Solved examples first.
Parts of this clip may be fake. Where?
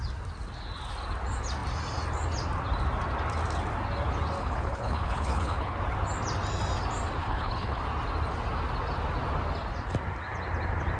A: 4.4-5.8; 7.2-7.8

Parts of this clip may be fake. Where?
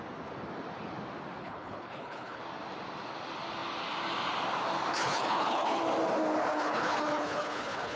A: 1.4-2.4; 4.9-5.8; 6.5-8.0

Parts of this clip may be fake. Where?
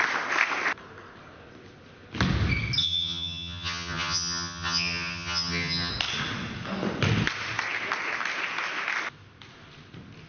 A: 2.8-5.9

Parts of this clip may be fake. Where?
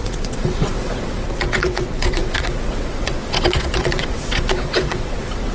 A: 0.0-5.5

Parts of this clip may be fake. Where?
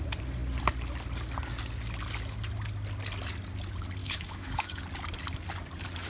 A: 4.0-4.8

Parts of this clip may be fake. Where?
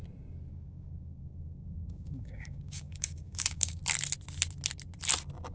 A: 0.5-3.8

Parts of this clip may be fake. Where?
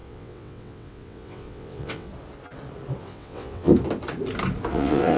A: 0.0-2.1; 3.0-3.7; 4.7-5.2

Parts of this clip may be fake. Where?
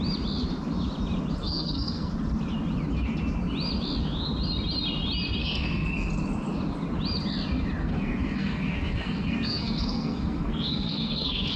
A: 1.4-2.1; 5.4-6.1; 7.8-11.6